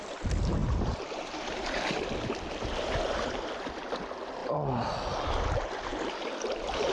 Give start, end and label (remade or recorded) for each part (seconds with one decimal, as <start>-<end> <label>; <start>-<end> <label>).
0.0-0.6 recorded; 0.6-4.0 remade; 4.0-6.9 recorded